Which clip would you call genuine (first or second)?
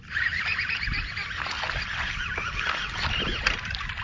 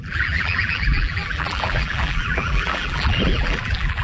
first